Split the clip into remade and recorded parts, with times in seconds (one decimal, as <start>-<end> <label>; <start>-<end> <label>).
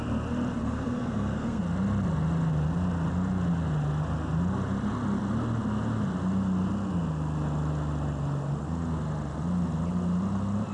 0.0-0.6 recorded; 0.6-1.6 remade; 1.6-10.7 recorded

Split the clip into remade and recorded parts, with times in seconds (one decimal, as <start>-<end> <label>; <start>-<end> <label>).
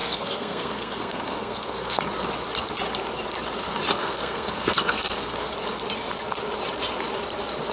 0.0-2.0 remade; 2.0-4.0 recorded; 4.0-5.5 remade; 5.5-7.7 recorded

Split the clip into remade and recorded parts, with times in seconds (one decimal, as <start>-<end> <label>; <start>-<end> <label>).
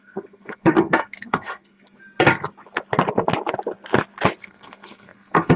0.0-1.8 remade; 1.8-4.4 recorded; 4.4-5.6 remade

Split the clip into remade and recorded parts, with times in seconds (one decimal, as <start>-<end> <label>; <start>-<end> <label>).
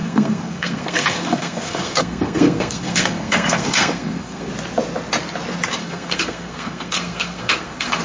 0.0-4.5 remade; 4.5-5.8 recorded; 5.8-8.0 remade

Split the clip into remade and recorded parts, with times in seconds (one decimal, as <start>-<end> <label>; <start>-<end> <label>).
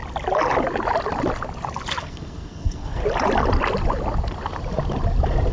0.0-2.0 recorded; 2.0-3.0 remade; 3.0-5.5 recorded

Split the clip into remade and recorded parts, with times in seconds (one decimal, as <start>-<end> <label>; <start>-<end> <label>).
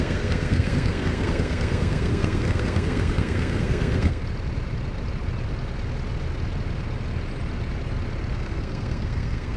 0.0-4.2 remade; 4.2-8.3 recorded; 8.3-9.6 remade